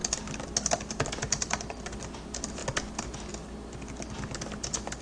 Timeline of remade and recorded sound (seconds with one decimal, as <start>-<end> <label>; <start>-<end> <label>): 0.0-5.0 recorded